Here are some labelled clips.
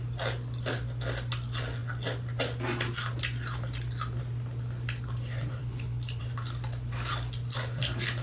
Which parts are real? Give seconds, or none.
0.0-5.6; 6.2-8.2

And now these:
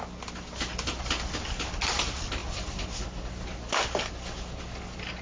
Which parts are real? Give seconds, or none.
0.0-5.2

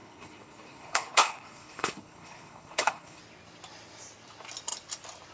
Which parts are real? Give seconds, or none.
3.2-5.3

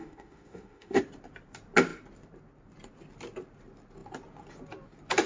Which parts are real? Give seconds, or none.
1.0-5.3

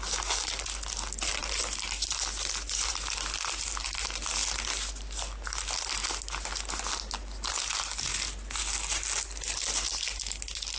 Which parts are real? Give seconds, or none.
0.0-10.8

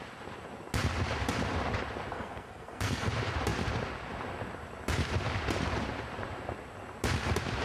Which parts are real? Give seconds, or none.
0.0-2.1; 3.1-7.6

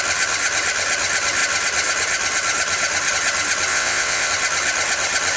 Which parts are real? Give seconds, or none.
0.0-3.7; 4.3-5.4